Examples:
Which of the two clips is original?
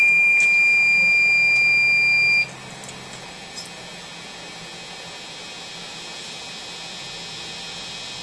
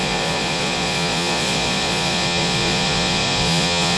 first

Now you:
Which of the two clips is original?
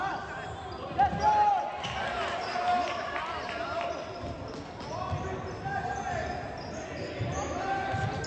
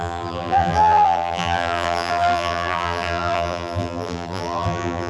first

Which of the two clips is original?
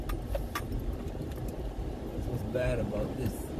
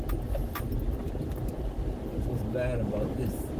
second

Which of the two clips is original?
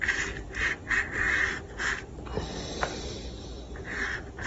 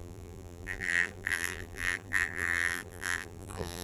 first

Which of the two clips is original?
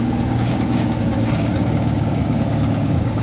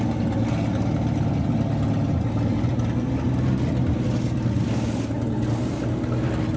second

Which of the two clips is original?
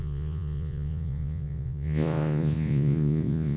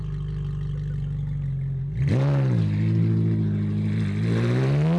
second